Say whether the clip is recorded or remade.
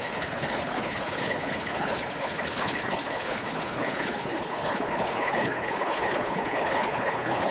remade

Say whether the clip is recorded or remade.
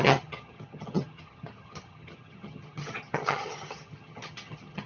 remade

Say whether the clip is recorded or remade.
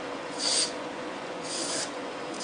remade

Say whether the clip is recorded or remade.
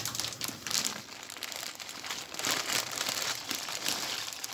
remade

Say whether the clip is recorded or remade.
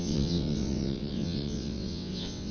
remade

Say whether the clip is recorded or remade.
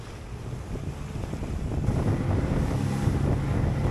recorded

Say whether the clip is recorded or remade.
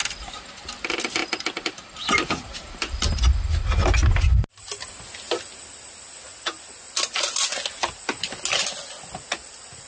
recorded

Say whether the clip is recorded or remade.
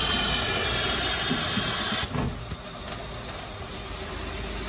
recorded